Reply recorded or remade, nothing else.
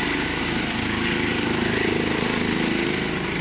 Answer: recorded